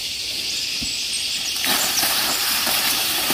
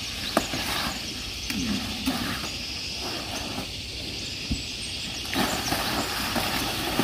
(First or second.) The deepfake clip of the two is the first